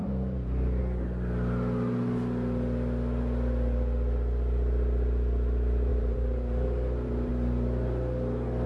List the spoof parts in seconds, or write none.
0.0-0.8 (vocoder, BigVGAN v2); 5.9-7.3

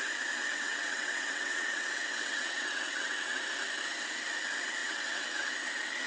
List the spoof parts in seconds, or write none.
0.5-3.4 (vocoder, WaveNeXt); 4.8-5.5

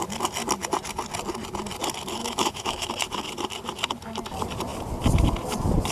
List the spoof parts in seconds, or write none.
2.2-2.9 (autoencoder, DAC-VAE)